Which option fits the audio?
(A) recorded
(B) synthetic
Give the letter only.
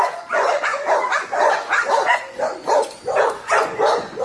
B